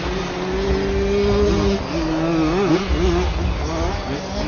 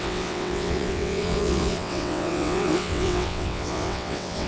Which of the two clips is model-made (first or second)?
second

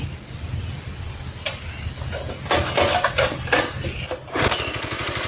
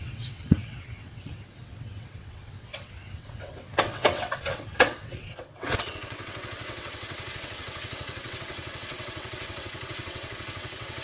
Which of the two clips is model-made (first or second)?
second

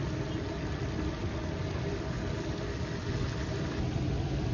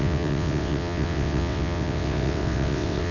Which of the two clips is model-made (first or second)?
second